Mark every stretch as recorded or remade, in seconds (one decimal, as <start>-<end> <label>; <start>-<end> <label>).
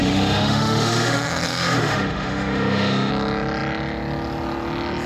0.0-3.1 remade; 3.1-5.1 recorded